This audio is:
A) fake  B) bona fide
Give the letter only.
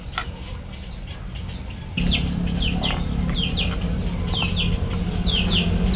B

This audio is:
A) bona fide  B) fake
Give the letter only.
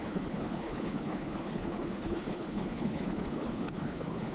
B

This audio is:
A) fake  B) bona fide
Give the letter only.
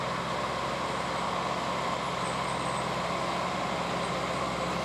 B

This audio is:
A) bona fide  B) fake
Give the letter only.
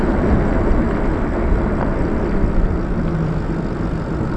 A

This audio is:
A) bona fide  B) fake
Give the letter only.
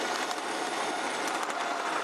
A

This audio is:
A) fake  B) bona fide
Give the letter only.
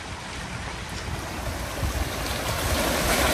B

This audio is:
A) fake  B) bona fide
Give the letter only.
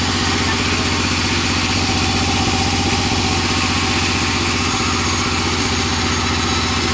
B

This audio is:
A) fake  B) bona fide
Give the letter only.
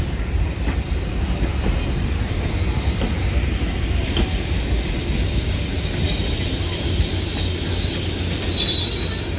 B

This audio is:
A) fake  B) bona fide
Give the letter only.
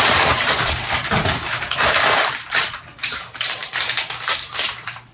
A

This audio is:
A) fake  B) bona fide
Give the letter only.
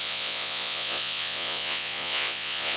A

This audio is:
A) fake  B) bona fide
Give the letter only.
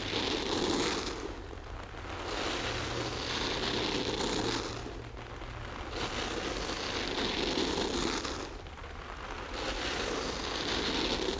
B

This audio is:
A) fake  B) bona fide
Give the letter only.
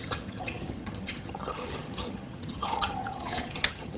A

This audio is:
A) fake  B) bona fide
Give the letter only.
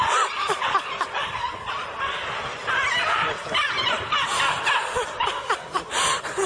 B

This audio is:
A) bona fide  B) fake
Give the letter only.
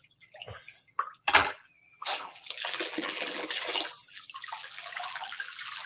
B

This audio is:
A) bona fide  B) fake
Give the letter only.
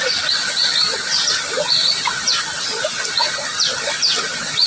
A